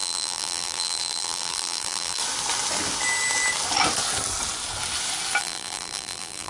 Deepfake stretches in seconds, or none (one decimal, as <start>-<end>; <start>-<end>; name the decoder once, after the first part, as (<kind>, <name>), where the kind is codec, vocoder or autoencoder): 0.0-2.2 (vocoder, BigVGAN v2); 5.4-6.5